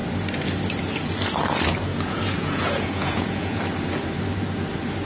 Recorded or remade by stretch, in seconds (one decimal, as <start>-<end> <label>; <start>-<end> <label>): 0.0-1.9 recorded; 1.9-3.6 remade; 3.6-5.0 recorded